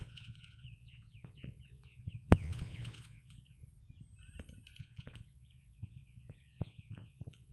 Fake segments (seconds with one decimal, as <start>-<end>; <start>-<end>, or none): 0.0-3.6; 4.8-7.5